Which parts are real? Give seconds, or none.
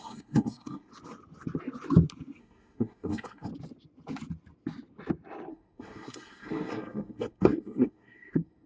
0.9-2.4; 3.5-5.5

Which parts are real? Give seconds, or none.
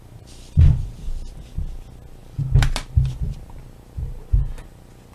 0.0-5.1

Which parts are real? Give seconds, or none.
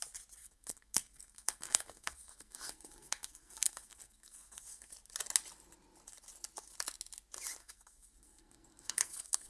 0.0-0.4; 4.9-7.6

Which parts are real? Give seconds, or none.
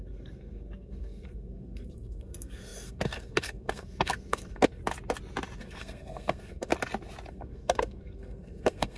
4.8-5.6; 6.7-7.3